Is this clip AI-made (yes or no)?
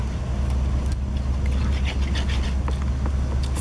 no